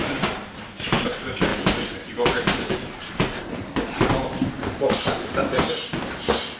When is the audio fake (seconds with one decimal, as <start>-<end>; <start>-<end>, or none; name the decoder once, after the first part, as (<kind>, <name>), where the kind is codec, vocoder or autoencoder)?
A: 0.0-1.5 (vocoder, BigVGAN v2); 2.7-4.4